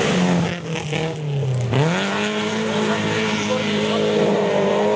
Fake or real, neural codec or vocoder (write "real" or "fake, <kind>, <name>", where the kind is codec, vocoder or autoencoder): real